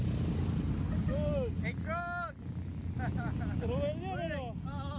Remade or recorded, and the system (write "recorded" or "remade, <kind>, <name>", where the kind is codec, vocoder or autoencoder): recorded